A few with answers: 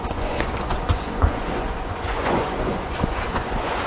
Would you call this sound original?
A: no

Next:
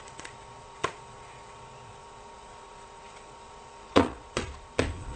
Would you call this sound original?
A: no